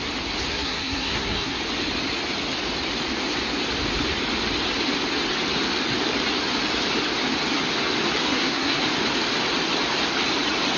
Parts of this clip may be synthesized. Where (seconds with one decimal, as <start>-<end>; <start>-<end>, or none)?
0.5-1.6; 8.2-8.8